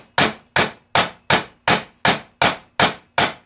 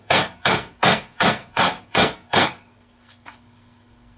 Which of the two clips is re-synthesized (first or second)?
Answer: second